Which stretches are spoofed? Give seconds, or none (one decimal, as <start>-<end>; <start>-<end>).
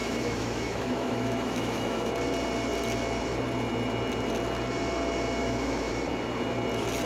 0.0-2.1; 5.4-5.9